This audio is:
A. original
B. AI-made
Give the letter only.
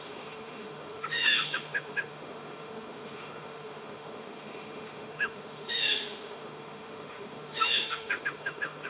B